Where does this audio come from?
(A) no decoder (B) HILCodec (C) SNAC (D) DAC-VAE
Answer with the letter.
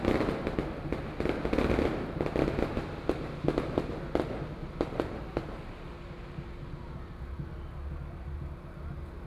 A